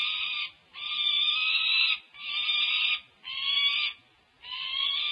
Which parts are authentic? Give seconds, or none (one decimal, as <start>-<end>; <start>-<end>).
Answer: 2.8-5.1

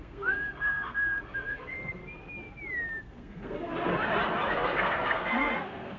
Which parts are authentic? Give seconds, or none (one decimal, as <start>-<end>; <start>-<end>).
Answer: 2.0-3.0; 3.9-4.5

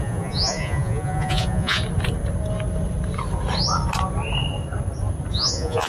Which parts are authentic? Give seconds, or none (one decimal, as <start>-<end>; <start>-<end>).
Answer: 1.8-5.3

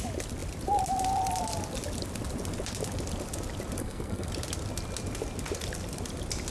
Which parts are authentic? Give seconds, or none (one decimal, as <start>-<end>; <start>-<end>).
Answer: 0.0-3.8; 4.3-6.5